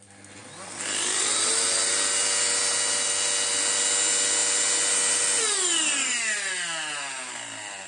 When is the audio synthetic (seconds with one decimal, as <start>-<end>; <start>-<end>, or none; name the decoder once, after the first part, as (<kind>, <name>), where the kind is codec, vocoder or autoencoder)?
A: none